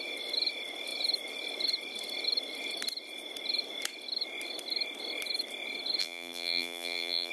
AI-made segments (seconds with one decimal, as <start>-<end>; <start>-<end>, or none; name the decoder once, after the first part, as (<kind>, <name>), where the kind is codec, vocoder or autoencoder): 6.0-7.3 (vocoder, BigVGAN v2)